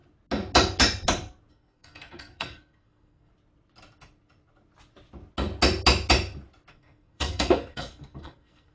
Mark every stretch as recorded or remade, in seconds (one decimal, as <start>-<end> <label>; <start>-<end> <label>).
0.0-1.5 recorded; 1.5-3.3 remade; 3.3-6.7 recorded; 6.7-8.7 remade